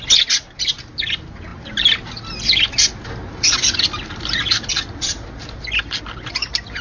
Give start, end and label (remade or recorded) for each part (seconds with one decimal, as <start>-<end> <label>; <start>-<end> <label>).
0.0-6.8 recorded